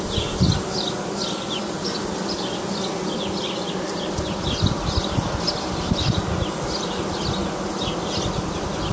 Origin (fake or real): real